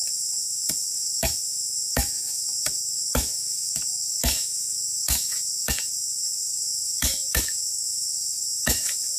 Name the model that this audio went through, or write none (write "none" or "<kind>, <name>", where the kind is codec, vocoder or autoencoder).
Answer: autoencoder, DAC-VAE